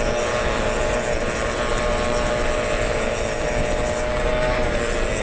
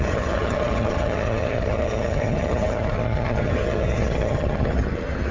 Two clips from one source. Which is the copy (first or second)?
second